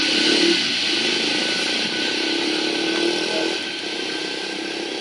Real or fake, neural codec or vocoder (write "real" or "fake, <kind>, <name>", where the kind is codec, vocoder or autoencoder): real